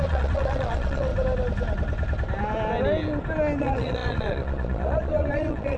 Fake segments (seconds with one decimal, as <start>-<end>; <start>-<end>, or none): 0.0-1.1; 3.6-5.8